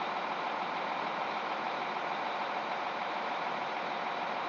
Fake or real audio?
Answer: real